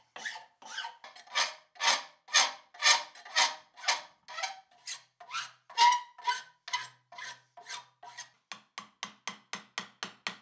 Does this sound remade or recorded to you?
recorded